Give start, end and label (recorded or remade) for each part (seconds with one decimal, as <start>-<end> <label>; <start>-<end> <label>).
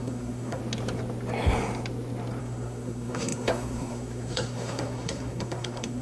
0.0-0.6 remade; 0.6-2.4 recorded; 2.4-6.0 remade